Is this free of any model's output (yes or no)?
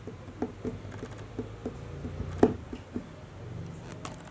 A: yes